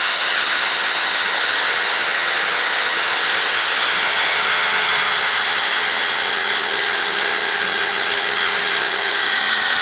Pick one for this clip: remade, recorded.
remade